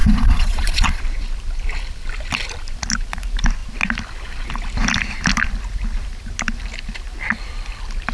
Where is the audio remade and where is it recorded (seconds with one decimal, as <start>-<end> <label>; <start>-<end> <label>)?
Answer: 0.0-1.0 remade; 1.0-8.1 recorded